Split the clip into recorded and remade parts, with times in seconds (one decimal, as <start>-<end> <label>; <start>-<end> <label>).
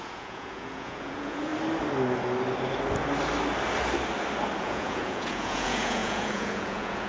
0.0-1.5 remade; 1.5-4.6 recorded; 4.6-7.1 remade